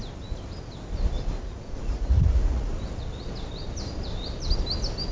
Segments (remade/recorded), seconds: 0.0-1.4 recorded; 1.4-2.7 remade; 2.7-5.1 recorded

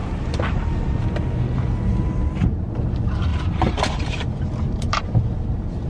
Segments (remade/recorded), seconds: 0.0-1.9 recorded; 1.9-2.8 remade; 2.8-3.3 recorded; 3.3-5.0 remade; 5.0-5.9 recorded

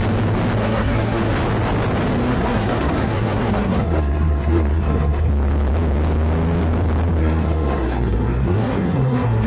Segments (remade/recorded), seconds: 0.0-0.6 recorded; 0.6-1.3 remade; 1.3-2.3 recorded; 2.3-5.3 remade; 5.3-7.2 recorded; 7.2-9.5 remade

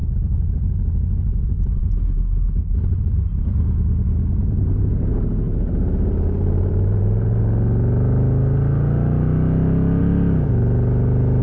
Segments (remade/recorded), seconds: 0.0-1.9 remade; 1.9-2.6 recorded; 2.6-3.1 remade; 3.1-4.4 recorded; 4.4-7.4 remade; 7.4-10.0 recorded; 10.0-10.5 remade; 10.5-11.4 recorded

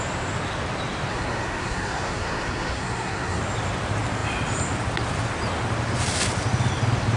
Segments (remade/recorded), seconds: 0.0-1.1 recorded; 1.1-3.4 remade; 3.4-7.2 recorded